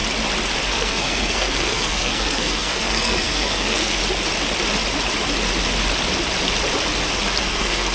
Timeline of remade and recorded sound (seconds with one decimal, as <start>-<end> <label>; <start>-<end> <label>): 0.0-0.7 recorded; 0.7-4.0 remade; 4.0-7.4 recorded; 7.4-7.9 remade